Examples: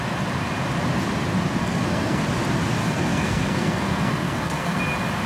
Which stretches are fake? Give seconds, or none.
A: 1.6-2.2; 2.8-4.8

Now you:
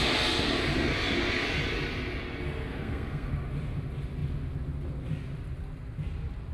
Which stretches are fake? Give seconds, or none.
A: 2.7-3.3

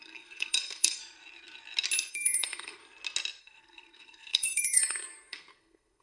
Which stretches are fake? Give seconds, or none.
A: 0.0-1.0; 2.1-2.8; 3.4-6.0